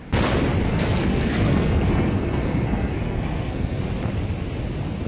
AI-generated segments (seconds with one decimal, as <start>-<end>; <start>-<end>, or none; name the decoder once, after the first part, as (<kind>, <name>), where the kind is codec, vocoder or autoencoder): 0.7-3.8 (codec, SNAC)